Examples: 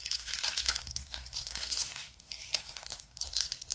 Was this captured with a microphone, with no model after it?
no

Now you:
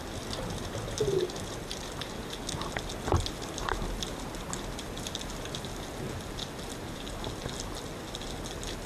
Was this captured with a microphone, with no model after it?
yes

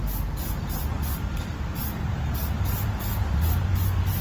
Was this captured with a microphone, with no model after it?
yes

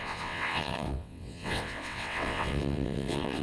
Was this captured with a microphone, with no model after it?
no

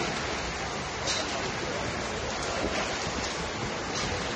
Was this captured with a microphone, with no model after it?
yes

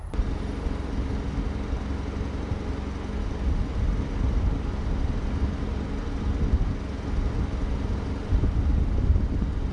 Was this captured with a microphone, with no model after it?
yes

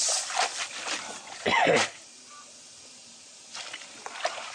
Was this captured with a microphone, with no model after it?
yes